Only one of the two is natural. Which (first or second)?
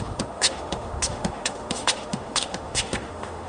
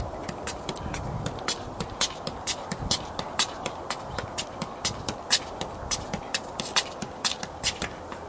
second